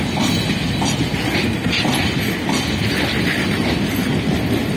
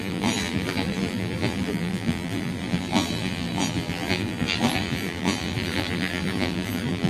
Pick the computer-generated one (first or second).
second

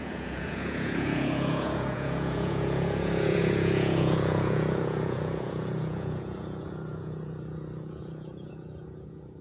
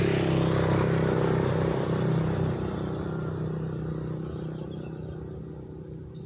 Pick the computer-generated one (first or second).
first